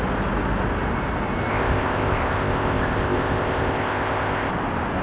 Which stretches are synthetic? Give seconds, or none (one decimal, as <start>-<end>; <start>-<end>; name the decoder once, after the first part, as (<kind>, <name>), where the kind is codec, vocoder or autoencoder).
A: 1.5-4.5 (codec, ZipCodec)